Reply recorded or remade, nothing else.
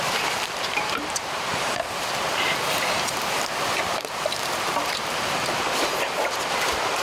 remade